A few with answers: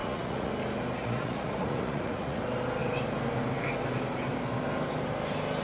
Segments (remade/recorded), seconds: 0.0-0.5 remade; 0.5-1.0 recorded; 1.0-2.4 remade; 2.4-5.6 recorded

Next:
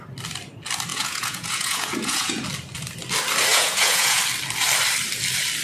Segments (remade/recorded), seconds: 0.0-0.9 recorded; 0.9-2.4 remade; 2.4-3.5 recorded; 3.5-4.2 remade; 4.2-5.6 recorded

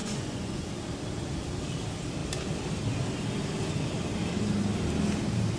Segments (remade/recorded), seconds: 0.0-0.7 remade; 0.7-5.6 recorded

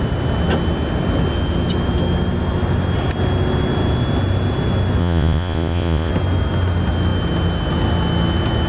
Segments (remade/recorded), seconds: 0.0-5.0 recorded; 5.0-6.1 remade; 6.1-8.7 recorded

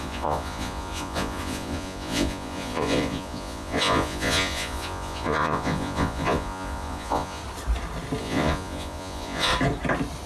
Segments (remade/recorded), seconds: 0.0-7.4 remade; 7.4-8.2 recorded; 8.2-9.5 remade; 9.5-10.3 recorded

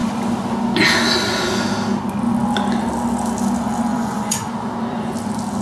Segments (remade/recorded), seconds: 0.0-3.9 recorded; 3.9-4.5 remade; 4.5-5.6 recorded

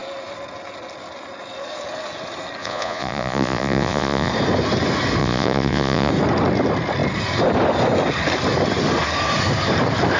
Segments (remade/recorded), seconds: 0.0-2.6 recorded; 2.6-4.3 remade; 4.3-5.2 recorded; 5.2-6.1 remade; 6.1-10.2 recorded